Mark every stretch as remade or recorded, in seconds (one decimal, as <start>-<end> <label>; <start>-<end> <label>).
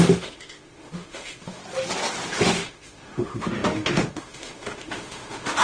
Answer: 0.0-1.6 remade; 1.6-2.4 recorded; 2.4-5.6 remade